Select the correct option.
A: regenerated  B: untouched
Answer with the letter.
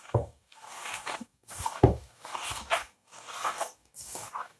A